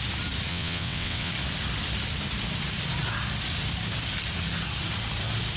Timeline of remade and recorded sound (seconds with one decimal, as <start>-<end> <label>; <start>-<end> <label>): 0.0-0.5 recorded; 0.5-1.3 remade; 1.3-5.6 recorded